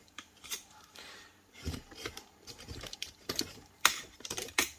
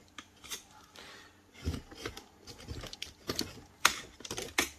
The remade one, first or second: first